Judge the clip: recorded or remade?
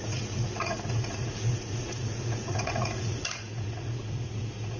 remade